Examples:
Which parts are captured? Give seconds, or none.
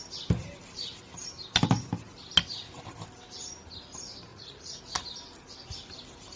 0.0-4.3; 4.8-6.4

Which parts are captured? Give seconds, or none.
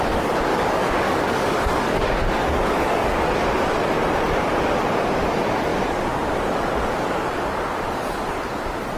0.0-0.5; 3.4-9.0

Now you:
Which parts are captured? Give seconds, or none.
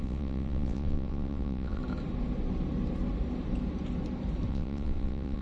1.8-4.5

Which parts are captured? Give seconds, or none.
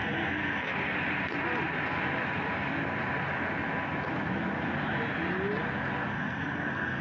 0.7-6.1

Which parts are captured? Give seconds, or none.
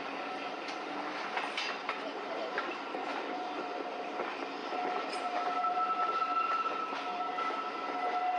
0.0-1.8; 2.7-3.1; 3.6-4.6; 7.3-8.4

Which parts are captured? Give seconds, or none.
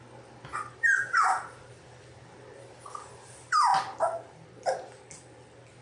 0.0-5.8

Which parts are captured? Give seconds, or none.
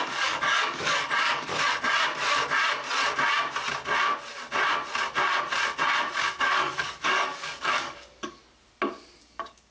1.5-6.4; 8.4-9.2